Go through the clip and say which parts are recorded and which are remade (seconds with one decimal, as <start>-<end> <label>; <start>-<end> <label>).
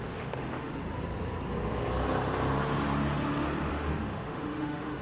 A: 0.0-0.7 remade; 0.7-3.7 recorded; 3.7-5.0 remade